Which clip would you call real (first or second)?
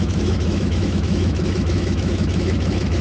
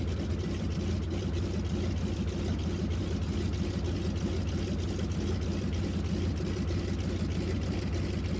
second